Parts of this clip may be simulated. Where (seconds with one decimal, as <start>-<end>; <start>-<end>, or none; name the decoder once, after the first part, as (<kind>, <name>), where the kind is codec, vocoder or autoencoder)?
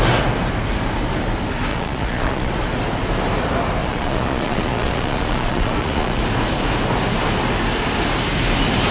1.7-2.5 (vocoder, Vocos); 3.8-6.2